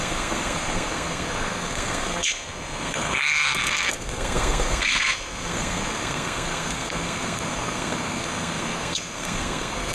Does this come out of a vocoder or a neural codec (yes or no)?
yes